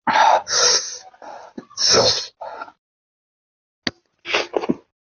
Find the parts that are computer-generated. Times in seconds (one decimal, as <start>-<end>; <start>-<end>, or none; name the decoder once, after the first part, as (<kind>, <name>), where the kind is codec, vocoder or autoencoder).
none